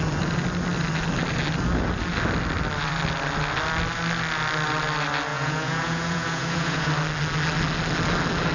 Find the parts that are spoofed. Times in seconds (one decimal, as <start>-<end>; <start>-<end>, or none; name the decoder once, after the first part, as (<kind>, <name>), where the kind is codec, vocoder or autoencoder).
5.3-6.9 (vocoder, Vocos)